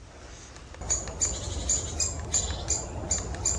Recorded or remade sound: recorded